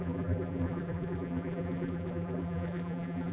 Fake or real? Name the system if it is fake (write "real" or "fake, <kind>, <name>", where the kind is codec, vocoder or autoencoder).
fake, vocoder, BigVGAN v2